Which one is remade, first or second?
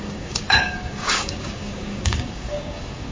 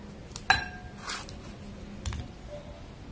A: first